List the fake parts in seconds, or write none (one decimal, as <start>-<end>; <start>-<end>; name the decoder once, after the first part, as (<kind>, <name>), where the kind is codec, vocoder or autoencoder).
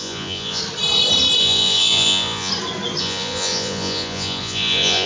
0.0-0.6 (vocoder, Vocos); 1.4-2.5; 3.0-5.1